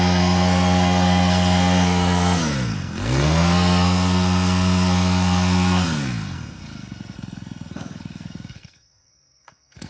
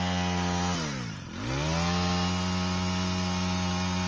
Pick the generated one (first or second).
first